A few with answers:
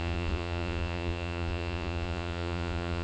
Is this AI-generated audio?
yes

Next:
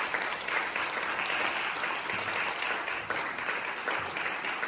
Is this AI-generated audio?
no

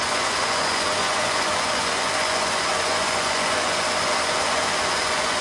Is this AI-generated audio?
yes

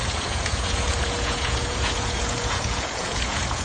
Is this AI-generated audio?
yes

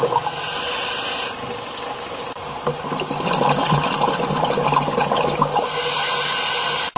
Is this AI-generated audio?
no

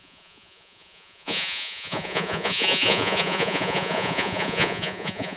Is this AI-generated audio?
yes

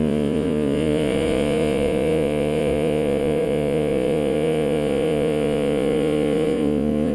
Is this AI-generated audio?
yes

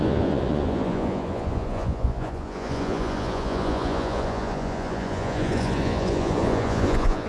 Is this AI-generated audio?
yes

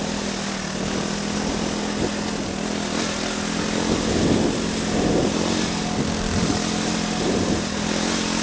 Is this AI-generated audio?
no